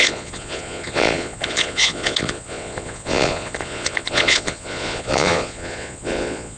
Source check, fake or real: fake